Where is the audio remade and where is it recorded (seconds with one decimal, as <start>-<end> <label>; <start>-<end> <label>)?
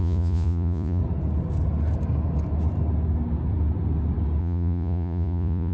0.0-1.0 remade; 1.0-4.4 recorded; 4.4-5.7 remade